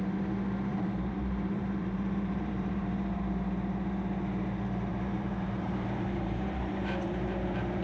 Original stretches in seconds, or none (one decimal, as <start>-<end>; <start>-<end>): 0.0-0.7; 3.2-4.9